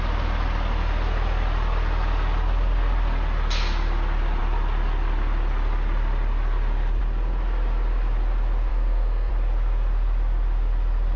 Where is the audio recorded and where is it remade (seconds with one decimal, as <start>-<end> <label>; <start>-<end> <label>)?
0.0-8.7 recorded; 8.7-9.3 remade; 9.3-11.2 recorded